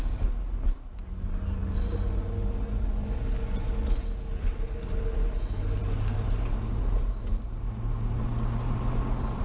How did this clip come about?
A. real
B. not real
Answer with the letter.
A